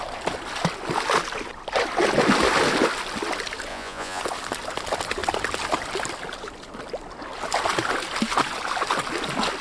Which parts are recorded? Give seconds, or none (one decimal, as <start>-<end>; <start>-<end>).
0.0-3.7; 4.2-9.6